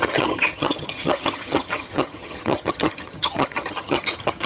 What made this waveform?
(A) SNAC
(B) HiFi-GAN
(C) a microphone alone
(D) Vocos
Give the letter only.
B